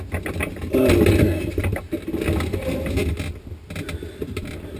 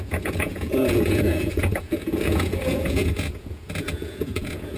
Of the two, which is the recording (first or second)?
first